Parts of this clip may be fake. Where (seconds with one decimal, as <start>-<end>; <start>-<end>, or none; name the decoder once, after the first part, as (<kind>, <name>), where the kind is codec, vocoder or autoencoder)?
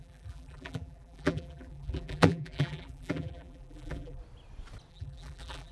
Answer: 0.0-4.2 (vocoder, BigVGAN v2); 4.9-5.7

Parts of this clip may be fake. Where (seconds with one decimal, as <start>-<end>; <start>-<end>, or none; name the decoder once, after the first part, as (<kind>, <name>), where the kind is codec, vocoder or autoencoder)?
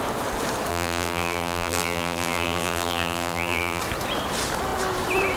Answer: 0.7-3.8 (vocoder, BigVGAN v2)